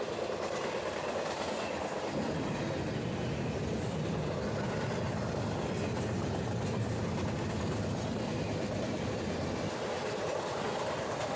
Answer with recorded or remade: recorded